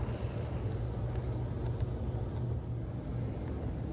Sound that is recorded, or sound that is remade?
recorded